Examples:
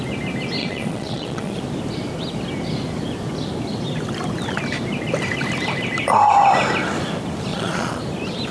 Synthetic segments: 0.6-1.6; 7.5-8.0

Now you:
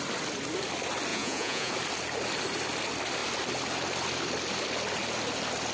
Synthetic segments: 1.1-1.7

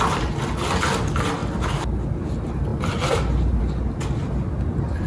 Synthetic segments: none

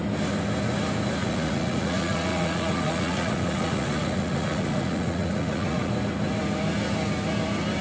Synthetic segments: 1.2-5.9

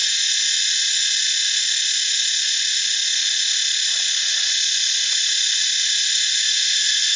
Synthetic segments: none

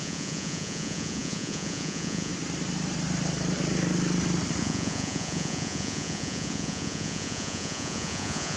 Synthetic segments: 0.0-2.3; 4.6-8.6